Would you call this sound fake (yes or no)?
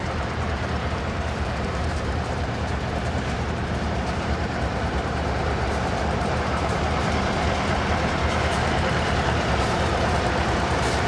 yes